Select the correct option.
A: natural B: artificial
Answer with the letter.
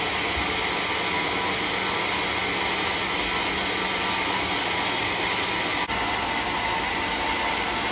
A